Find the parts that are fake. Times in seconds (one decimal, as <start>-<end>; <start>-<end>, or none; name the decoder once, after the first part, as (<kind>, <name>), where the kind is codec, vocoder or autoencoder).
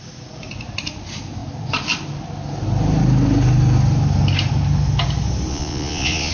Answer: 5.5-6.3 (vocoder, Vocos)